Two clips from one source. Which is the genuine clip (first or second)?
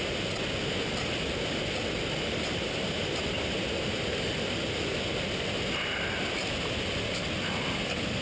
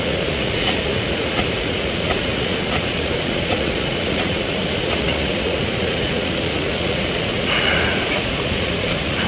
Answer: first